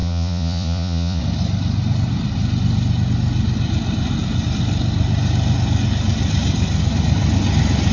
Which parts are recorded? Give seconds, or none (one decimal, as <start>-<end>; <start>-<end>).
1.2-7.9